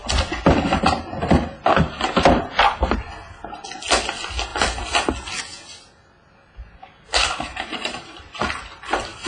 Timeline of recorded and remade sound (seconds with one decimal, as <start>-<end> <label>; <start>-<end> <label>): 0.0-7.5 recorded; 7.5-8.2 remade; 8.2-9.3 recorded